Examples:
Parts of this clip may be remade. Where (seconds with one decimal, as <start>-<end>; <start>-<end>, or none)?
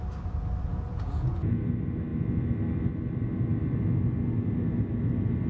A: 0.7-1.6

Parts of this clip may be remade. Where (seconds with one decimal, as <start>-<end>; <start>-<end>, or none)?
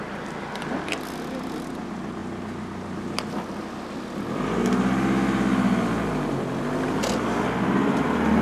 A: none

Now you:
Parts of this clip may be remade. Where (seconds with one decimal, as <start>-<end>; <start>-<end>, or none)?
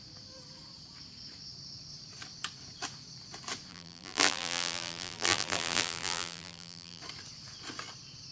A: 3.7-7.0